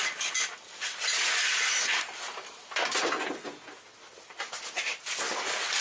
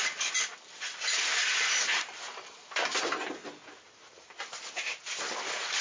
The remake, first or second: second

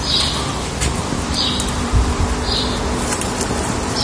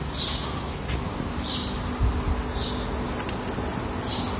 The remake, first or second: first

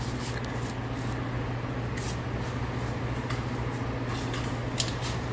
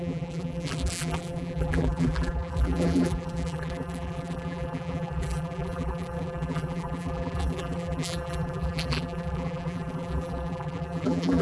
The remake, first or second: second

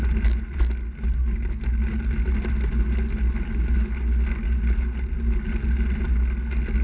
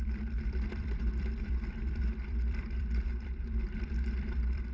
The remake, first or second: second